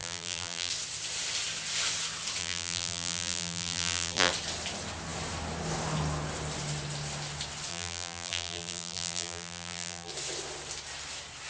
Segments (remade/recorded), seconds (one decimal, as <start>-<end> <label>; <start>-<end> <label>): 0.0-0.7 remade; 0.7-2.4 recorded; 2.4-4.3 remade; 4.3-7.7 recorded; 7.7-10.1 remade; 10.1-11.5 recorded